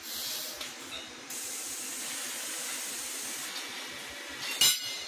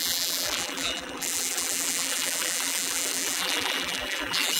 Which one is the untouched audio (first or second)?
first